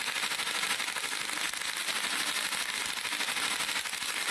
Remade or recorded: recorded